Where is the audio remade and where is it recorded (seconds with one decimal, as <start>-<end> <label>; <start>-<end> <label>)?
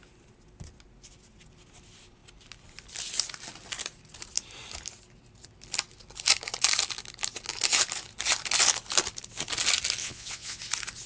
0.0-10.0 recorded; 10.0-10.6 remade; 10.6-11.1 recorded